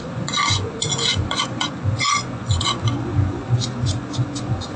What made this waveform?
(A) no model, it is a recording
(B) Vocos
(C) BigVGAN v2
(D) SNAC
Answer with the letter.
B